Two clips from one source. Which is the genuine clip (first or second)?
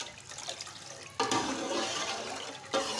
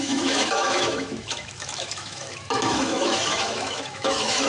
first